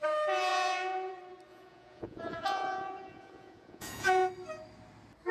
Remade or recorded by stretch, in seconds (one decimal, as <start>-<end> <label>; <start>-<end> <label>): 0.0-0.5 recorded; 0.5-1.1 remade; 1.1-1.5 recorded; 1.5-4.3 remade; 4.3-5.3 recorded